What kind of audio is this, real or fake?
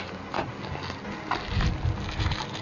real